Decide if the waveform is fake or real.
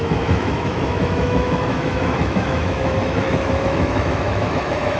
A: fake